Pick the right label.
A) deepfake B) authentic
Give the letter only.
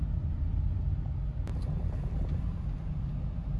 B